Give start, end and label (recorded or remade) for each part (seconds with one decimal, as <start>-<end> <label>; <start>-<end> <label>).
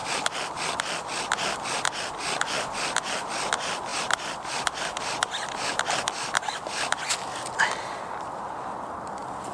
0.0-9.5 recorded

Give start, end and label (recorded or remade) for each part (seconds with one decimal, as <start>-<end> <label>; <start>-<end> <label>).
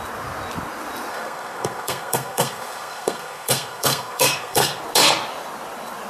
0.0-1.1 recorded; 1.1-4.8 remade; 4.8-6.1 recorded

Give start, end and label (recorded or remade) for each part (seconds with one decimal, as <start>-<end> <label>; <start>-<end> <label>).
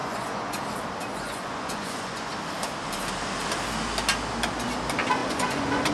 0.0-0.6 remade; 0.6-1.1 recorded; 1.1-2.3 remade; 2.3-5.2 recorded; 5.2-5.9 remade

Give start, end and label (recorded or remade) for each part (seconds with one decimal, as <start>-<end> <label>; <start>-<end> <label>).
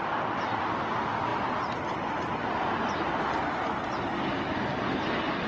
0.0-0.6 remade; 0.6-5.5 recorded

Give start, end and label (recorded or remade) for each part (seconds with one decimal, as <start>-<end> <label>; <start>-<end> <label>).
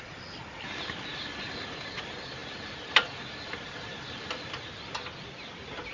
0.0-5.9 recorded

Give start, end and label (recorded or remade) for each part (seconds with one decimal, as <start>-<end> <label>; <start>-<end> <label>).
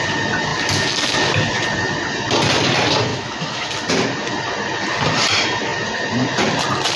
0.0-3.1 recorded; 3.1-3.7 remade; 3.7-7.0 recorded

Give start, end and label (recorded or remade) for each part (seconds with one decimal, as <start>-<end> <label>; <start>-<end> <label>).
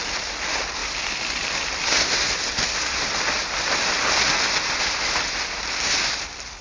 0.0-0.8 recorded; 0.8-4.8 remade; 4.8-6.6 recorded